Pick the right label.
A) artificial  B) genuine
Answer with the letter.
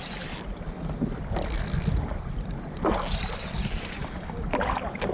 A